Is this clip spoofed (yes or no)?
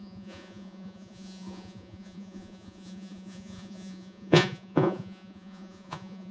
yes